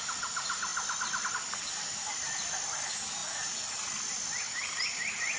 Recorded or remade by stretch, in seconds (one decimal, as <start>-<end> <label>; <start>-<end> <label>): 0.0-5.4 recorded